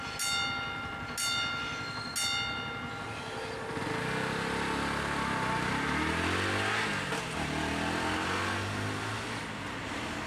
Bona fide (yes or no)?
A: yes